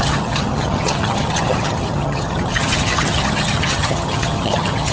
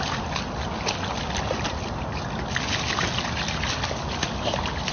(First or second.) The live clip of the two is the second